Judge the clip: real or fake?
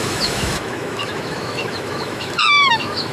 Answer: fake